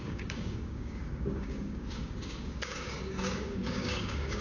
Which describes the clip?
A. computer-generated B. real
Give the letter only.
A